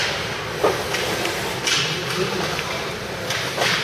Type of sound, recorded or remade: recorded